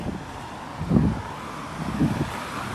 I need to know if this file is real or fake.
real